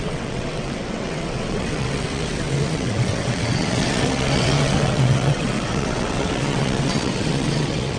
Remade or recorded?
remade